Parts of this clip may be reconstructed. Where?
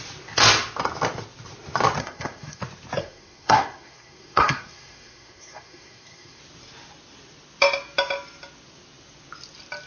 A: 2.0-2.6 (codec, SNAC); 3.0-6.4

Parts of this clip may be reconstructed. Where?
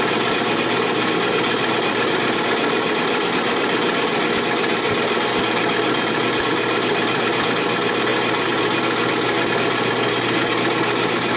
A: none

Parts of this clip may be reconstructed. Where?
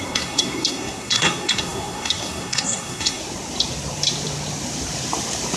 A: 0.0-3.2 (codec, SNAC)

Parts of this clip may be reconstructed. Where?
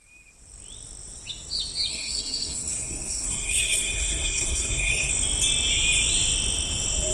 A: 1.9-5.1 (codec, SNAC)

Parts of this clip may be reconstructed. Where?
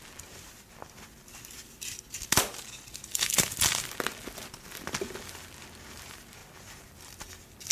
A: none